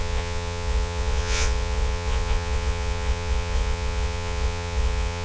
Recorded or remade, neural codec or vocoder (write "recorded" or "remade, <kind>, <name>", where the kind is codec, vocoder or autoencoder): remade, vocoder, Vocos